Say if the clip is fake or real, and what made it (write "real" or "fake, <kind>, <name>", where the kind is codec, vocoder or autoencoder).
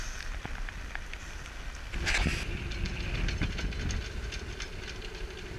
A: real